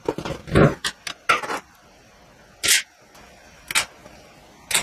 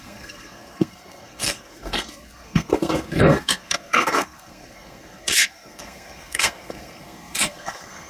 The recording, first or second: first